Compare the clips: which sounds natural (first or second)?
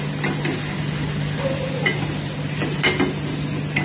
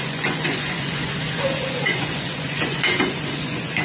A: first